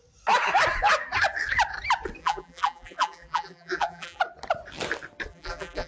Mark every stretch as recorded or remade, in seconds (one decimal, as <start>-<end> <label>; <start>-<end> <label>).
0.0-2.2 recorded; 2.2-4.2 remade; 4.2-5.3 recorded; 5.3-5.9 remade